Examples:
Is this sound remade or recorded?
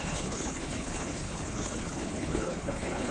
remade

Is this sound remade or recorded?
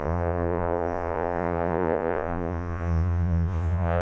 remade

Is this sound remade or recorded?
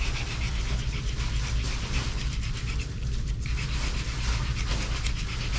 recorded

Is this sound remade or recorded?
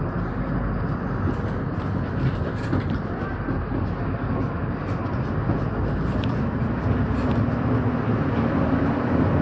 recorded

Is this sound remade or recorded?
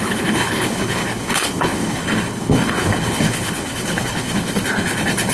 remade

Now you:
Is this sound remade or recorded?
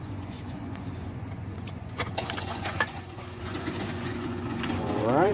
remade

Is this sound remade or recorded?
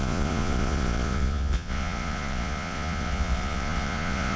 remade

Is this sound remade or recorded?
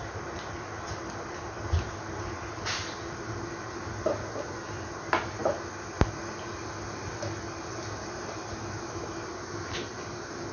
recorded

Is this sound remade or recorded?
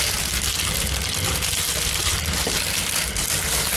recorded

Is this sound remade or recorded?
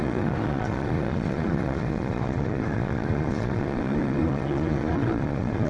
remade